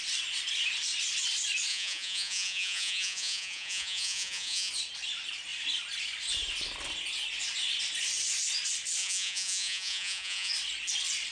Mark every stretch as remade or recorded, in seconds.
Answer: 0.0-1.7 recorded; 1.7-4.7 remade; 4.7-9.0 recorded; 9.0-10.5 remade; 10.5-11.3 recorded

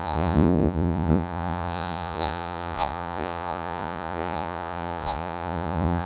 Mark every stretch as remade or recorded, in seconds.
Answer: 0.0-6.0 remade